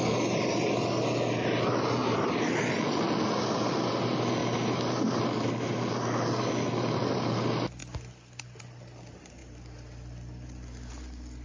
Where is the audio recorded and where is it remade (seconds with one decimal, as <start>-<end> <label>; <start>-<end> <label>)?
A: 0.0-2.0 recorded; 2.0-2.6 remade; 2.6-4.4 recorded; 4.4-5.2 remade; 5.2-11.4 recorded

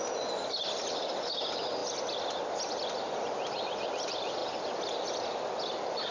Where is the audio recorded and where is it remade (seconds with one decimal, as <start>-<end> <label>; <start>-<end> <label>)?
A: 0.0-6.1 recorded